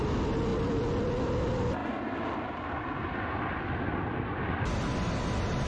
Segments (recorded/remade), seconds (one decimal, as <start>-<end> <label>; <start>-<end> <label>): 0.0-5.7 recorded